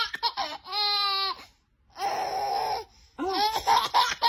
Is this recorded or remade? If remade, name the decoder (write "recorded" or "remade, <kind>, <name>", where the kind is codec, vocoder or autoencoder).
recorded